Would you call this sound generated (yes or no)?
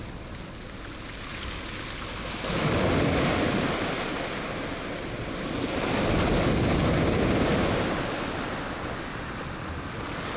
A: no